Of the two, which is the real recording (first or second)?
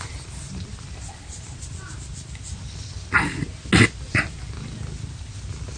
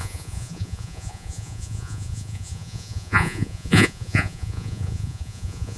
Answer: first